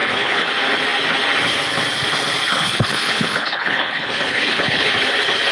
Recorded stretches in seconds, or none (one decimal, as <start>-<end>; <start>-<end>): 0.5-2.5; 4.9-5.5